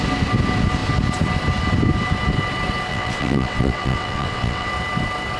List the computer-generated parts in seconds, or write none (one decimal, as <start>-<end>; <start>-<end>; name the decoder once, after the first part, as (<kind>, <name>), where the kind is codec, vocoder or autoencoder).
2.9-4.7 (vocoder, WaveNeXt)